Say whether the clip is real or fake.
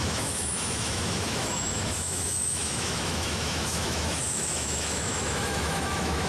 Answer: fake